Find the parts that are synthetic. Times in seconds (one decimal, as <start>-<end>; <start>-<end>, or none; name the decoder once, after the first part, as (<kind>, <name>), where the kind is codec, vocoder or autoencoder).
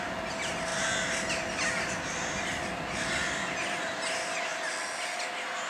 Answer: none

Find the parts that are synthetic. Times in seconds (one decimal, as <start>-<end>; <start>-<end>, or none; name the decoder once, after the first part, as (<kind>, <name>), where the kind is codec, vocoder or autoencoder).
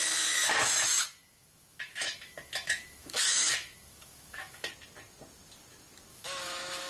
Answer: 0.6-4.7 (autoencoder, DAC-VAE); 6.1-6.9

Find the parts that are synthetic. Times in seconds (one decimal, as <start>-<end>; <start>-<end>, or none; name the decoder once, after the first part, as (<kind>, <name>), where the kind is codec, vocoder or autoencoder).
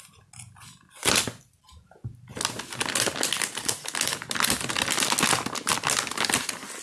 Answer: none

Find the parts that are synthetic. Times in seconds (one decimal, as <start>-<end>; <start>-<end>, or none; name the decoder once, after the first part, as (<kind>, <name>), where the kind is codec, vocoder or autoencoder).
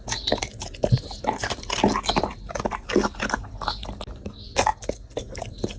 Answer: none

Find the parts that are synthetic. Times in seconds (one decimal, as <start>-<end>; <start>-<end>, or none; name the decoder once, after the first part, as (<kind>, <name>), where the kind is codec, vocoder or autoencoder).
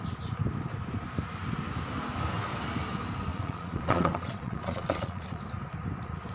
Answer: 3.3-5.4 (vocoder, Vocos)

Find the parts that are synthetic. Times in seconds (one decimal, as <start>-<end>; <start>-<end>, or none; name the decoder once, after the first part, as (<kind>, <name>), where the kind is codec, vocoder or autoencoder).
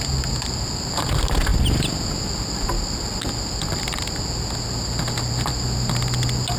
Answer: none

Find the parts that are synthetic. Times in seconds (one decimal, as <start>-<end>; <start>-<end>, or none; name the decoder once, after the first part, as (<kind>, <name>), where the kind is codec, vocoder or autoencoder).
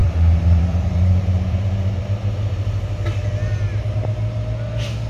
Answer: 0.0-2.0 (vocoder, BigVGAN v2)